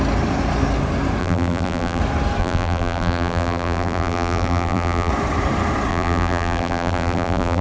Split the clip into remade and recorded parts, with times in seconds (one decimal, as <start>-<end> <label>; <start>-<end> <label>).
0.0-1.2 recorded; 1.2-2.0 remade; 2.0-2.4 recorded; 2.4-5.1 remade; 5.1-5.9 recorded; 5.9-7.6 remade